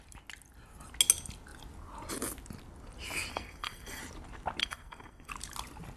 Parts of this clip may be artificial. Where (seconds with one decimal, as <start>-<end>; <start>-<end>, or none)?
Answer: 3.3-4.0; 4.6-5.3